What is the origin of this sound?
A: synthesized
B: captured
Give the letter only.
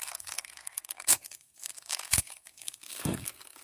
A